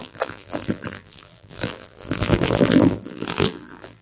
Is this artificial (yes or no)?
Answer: yes